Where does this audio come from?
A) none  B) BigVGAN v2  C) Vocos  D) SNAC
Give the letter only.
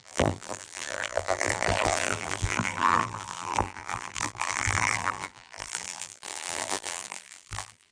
B